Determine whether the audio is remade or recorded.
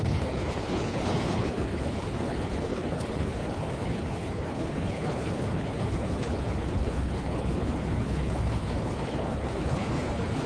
remade